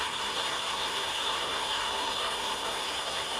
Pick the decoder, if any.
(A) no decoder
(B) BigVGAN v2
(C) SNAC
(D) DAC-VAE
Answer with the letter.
C